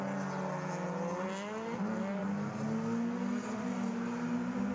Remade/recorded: recorded